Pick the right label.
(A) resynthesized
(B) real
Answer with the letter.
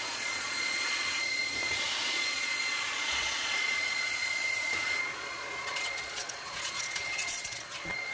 A